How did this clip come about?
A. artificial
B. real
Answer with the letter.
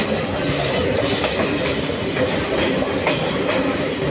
B